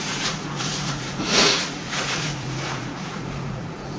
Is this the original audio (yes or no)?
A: no